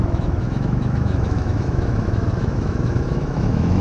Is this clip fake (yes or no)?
yes